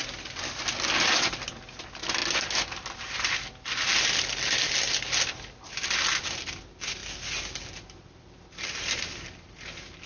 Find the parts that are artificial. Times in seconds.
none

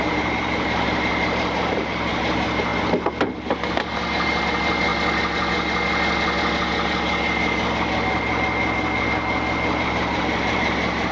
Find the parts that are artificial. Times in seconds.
0.0-2.7 (vocoder, BigVGAN v2); 3.9-4.9; 9.8-11.1

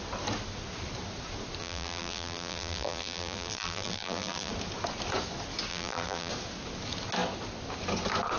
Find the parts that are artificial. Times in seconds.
1.6-4.5 (vocoder, BigVGAN v2); 5.7-6.3

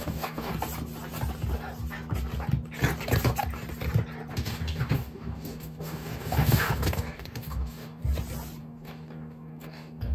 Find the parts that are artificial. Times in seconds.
0.0-0.5 (codec, DAC); 4.3-8.0; 8.6-10.1

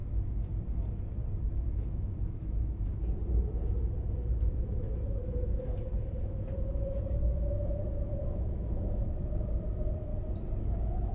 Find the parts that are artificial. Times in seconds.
1.5-2.9 (autoencoder, DAC-VAE); 4.2-10.1; 10.6-11.1

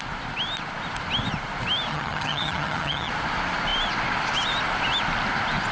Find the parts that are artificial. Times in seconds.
1.9-3.1 (vocoder, HiFi-GAN)

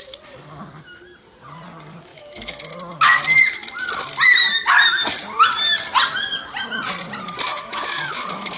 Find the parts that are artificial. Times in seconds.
2.1-2.7 (autoencoder, DAC-VAE); 7.5-8.6

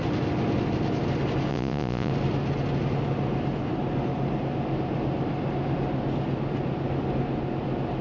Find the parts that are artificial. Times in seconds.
1.5-2.1 (vocoder, Vocos)